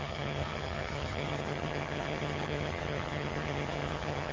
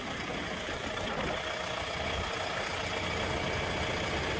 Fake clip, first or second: first